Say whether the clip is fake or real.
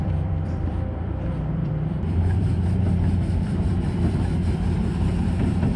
fake